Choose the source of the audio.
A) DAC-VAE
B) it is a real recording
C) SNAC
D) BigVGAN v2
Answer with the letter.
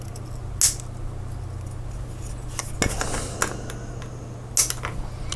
B